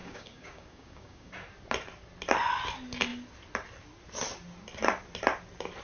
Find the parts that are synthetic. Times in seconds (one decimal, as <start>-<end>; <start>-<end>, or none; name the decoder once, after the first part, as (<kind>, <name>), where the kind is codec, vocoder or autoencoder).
0.0-1.3 (codec, DAC)